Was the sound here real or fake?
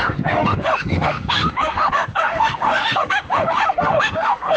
fake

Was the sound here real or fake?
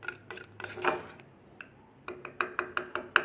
real